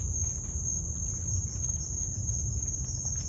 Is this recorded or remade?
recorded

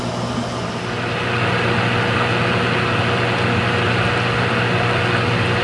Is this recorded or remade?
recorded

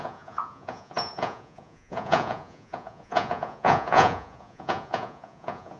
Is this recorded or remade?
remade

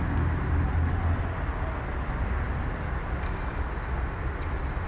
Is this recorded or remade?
recorded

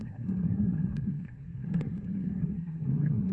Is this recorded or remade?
remade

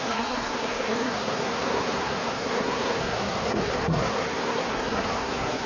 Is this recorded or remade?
remade